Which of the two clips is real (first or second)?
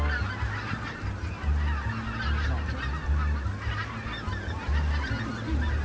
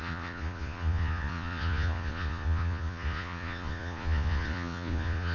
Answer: first